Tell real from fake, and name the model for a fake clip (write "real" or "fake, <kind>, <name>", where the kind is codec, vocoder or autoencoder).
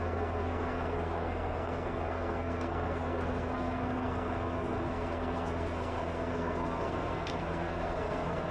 fake, codec, SNAC